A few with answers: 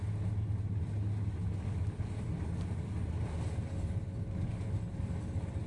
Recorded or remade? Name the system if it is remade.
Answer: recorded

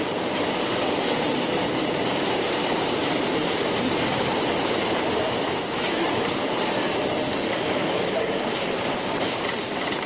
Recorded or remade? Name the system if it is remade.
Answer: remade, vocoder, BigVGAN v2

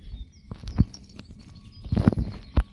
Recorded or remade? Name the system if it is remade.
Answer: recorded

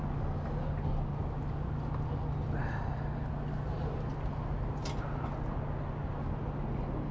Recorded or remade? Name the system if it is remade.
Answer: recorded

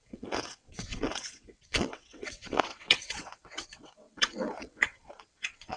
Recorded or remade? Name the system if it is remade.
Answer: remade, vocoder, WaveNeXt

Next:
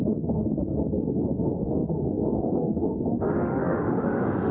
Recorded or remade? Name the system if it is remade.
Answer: remade, autoencoder, DAC-VAE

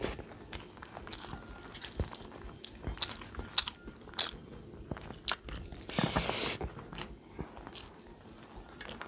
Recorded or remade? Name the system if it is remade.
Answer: recorded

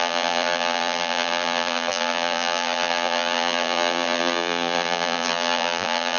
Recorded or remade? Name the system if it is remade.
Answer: remade, vocoder, BigVGAN v2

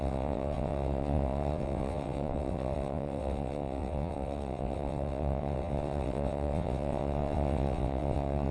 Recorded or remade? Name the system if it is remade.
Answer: remade, vocoder, WaveNeXt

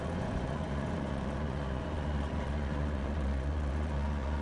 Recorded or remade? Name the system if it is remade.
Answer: remade, vocoder, Vocos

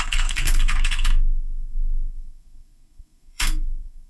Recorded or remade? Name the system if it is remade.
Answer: remade, codec, SNAC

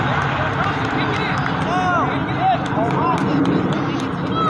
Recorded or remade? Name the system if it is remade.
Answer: recorded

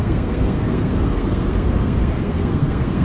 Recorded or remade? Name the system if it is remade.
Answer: remade, codec, SNAC